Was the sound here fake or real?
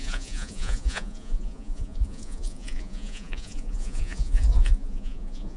fake